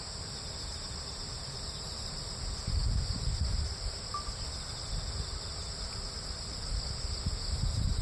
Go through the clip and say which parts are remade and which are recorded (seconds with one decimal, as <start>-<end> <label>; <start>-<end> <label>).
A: 0.0-8.0 recorded